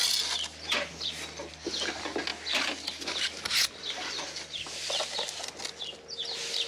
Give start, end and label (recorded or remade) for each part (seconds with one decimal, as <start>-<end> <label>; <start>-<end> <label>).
0.0-6.7 recorded